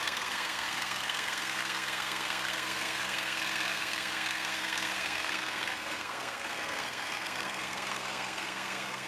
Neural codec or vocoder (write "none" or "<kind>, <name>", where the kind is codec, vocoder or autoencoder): codec, SNAC